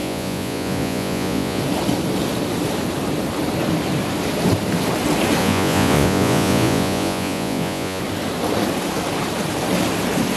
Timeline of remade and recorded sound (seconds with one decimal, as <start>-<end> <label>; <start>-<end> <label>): 0.0-1.6 remade; 1.6-5.4 recorded; 5.4-8.0 remade; 8.0-10.4 recorded